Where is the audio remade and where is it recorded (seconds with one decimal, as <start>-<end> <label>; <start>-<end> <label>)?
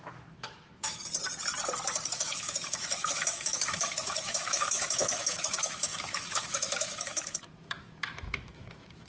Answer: 0.0-1.0 remade; 1.0-2.1 recorded; 2.1-9.1 remade